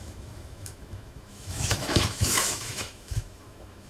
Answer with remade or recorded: remade